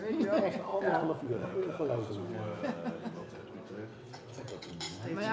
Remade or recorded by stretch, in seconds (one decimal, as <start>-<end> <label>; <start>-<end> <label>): 0.0-0.7 recorded; 0.7-2.1 remade; 2.1-3.9 recorded; 3.9-4.7 remade; 4.7-5.3 recorded